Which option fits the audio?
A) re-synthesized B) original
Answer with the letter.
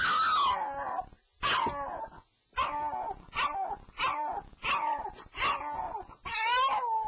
B